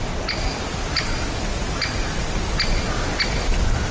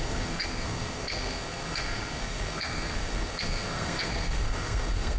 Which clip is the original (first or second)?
first